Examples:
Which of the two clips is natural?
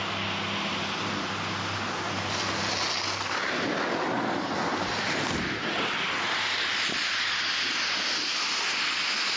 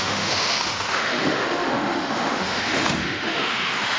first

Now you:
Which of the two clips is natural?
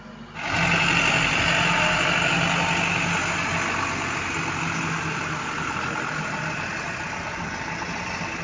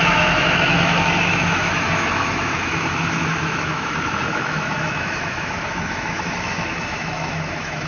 first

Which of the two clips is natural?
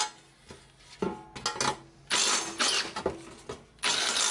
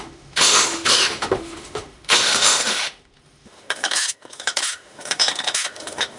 first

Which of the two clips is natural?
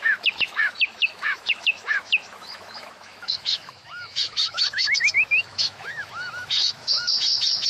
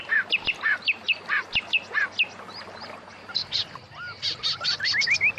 second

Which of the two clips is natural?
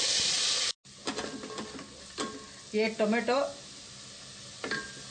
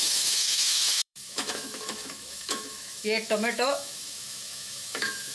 first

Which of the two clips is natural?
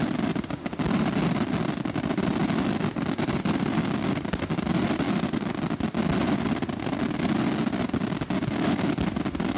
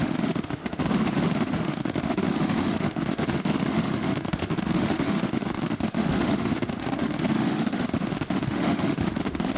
first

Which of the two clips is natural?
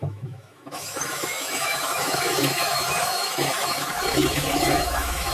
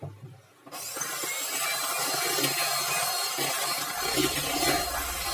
second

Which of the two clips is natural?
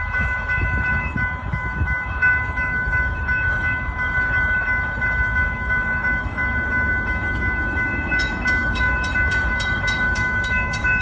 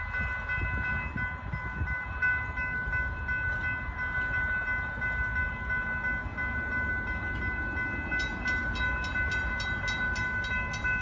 second